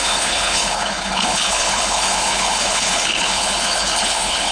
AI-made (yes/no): yes